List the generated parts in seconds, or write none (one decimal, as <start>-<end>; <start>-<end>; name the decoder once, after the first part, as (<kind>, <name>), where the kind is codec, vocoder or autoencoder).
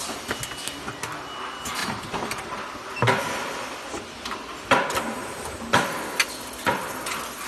1.8-2.6 (vocoder, BigVGAN v2); 5.2-5.8